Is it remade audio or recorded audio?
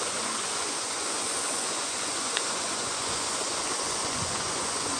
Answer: remade